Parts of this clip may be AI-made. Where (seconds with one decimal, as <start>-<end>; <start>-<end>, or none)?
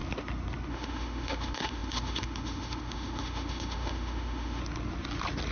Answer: 0.7-4.6